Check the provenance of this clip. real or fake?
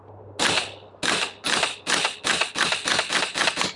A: real